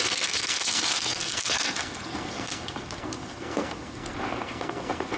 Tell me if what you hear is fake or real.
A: fake